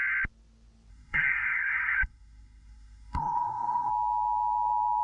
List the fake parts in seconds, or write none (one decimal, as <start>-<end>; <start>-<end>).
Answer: 0.9-3.9